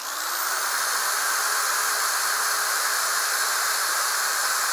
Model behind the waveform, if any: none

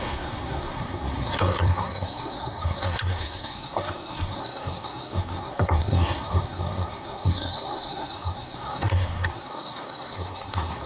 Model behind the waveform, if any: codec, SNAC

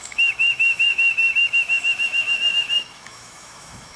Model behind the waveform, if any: autoencoder, DAC-VAE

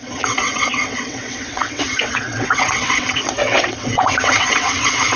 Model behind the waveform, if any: vocoder, WaveNeXt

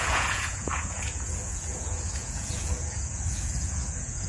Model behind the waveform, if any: vocoder, Vocos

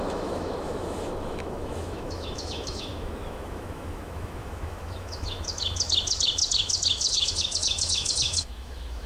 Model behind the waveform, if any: autoencoder, DAC-VAE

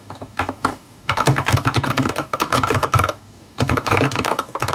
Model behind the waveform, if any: codec, DAC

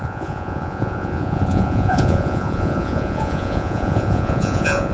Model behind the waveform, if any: vocoder, Vocos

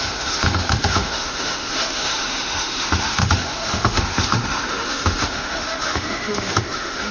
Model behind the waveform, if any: autoencoder, DAC-VAE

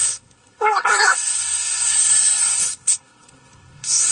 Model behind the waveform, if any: codec, SNAC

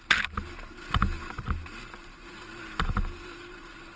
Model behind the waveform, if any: none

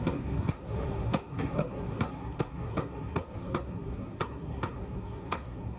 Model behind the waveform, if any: codec, SNAC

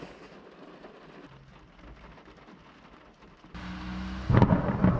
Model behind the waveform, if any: none